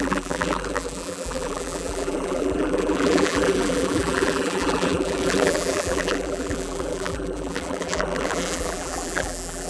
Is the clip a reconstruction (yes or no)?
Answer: yes